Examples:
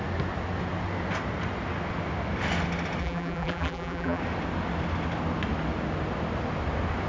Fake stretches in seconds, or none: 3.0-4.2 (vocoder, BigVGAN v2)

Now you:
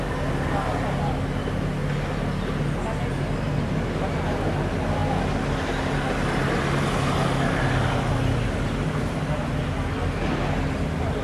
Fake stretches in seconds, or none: none